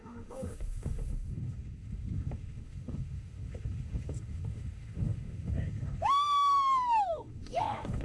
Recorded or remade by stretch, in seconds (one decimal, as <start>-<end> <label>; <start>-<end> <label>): 0.0-8.0 remade